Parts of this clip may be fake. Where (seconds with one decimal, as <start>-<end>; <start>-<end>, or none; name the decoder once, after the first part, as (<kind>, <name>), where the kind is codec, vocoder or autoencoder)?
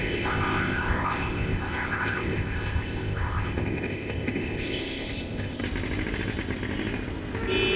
0.0-5.6 (codec, ZipCodec)